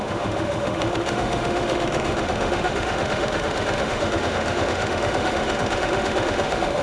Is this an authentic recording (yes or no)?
no